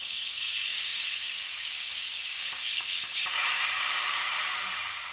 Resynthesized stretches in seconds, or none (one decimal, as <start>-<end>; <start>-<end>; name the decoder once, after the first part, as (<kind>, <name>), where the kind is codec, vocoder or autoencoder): 0.0-5.1 (codec, DAC)